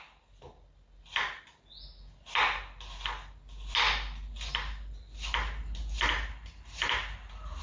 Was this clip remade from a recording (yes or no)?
no